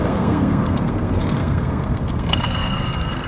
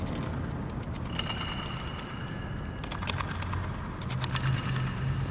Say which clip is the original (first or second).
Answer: second